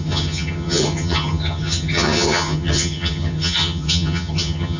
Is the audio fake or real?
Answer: fake